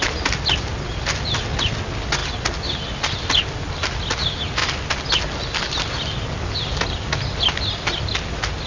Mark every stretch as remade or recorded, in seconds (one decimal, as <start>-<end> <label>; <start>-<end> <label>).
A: 0.0-8.7 recorded